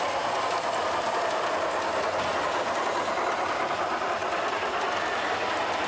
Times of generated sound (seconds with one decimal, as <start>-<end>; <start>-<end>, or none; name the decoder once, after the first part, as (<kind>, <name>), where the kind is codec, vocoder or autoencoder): none